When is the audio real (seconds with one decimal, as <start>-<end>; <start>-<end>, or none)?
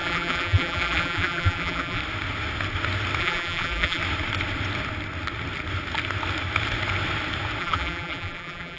2.0-3.2; 4.0-7.6